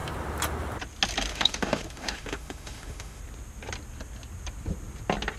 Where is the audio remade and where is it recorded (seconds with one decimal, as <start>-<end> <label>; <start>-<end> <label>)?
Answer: 0.0-1.3 recorded; 1.3-3.2 remade; 3.2-5.4 recorded